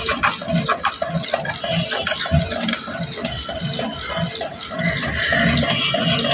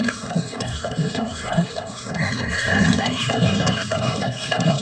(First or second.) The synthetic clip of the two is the second